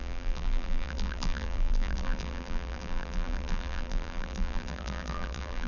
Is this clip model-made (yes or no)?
yes